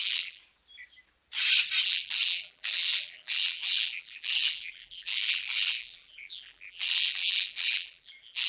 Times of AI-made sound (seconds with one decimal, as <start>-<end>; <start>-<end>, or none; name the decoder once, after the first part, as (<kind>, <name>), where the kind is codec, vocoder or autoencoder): 0.0-0.4 (vocoder, BigVGAN v2); 1.8-8.5